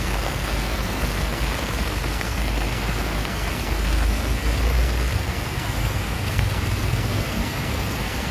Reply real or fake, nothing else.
fake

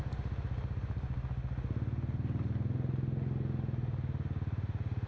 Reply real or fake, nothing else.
real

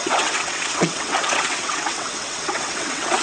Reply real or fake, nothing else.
fake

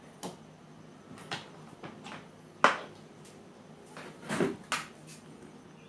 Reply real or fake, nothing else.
real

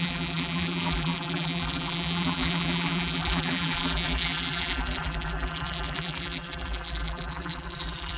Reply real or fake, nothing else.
fake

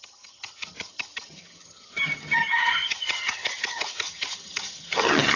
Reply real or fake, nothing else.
fake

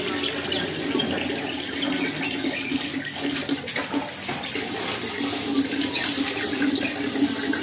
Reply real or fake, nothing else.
real